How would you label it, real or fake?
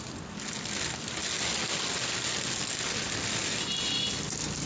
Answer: real